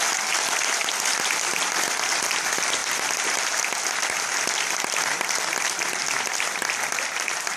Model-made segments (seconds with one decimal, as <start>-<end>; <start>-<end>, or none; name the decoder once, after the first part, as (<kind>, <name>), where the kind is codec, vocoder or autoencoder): 2.8-3.4 (vocoder, BigVGAN v2)